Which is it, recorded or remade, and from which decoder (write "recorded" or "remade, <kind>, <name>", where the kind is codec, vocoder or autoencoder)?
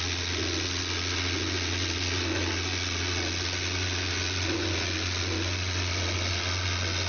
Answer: recorded